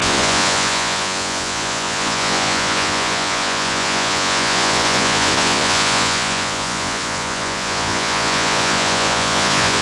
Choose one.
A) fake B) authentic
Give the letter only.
A